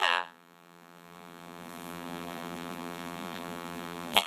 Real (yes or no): no